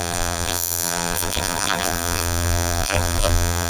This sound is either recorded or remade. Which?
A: remade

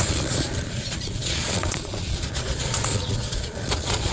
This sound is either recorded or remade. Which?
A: remade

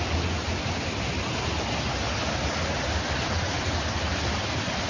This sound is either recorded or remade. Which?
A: recorded